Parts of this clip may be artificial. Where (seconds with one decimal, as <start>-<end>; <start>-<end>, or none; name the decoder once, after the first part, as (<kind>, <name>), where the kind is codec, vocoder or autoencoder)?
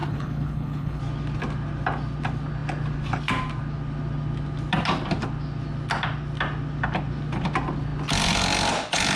0.0-1.0 (codec, HILCodec)